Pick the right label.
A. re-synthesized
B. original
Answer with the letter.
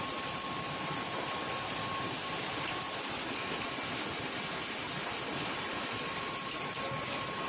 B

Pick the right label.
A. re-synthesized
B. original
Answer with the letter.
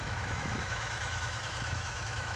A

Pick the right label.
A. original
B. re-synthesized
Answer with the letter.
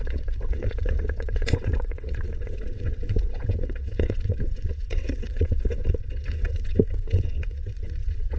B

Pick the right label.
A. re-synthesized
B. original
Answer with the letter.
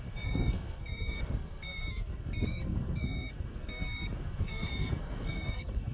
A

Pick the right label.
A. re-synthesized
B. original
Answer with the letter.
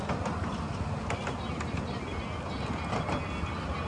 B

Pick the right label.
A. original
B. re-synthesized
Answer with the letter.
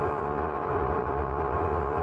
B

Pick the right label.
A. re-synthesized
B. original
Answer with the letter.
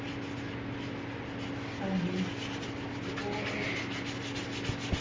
B